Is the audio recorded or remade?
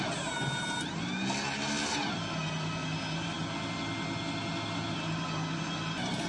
recorded